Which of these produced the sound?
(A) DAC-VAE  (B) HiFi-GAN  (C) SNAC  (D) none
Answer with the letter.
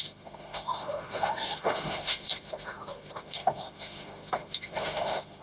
A